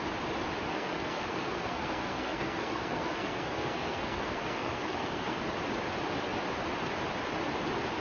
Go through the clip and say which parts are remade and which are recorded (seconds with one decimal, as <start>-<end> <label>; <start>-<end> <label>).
0.0-0.7 recorded; 0.7-5.4 remade; 5.4-8.0 recorded

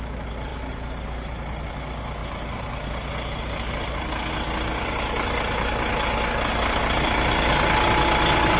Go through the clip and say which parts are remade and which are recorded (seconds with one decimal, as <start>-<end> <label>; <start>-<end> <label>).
0.0-0.5 recorded; 0.5-1.7 remade; 1.7-2.2 recorded; 2.2-4.0 remade; 4.0-8.6 recorded

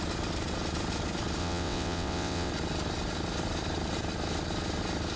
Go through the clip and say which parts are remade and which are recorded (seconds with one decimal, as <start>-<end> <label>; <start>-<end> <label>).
0.0-1.4 recorded; 1.4-2.5 remade; 2.5-5.2 recorded

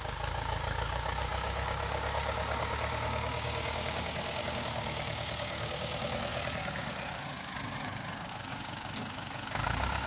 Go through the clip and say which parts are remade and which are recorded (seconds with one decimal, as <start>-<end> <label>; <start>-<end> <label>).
0.0-10.1 remade